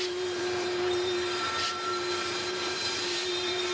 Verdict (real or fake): fake